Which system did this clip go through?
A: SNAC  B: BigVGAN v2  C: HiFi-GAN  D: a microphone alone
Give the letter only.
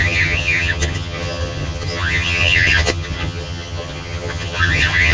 C